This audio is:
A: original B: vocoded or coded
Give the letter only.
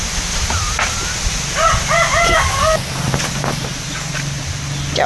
A